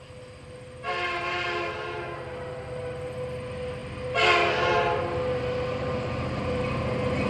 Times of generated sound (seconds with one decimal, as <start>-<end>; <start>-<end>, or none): none